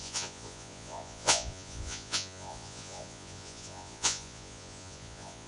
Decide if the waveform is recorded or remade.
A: remade